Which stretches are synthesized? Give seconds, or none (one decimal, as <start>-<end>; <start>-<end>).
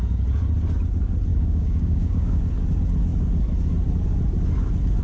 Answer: 1.3-2.4